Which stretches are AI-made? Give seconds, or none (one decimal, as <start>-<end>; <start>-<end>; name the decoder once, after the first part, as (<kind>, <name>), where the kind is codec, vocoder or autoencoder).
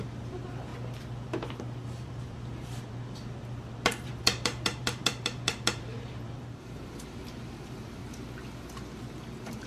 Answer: 0.0-0.7 (vocoder, BigVGAN v2); 1.8-8.0; 9.0-9.7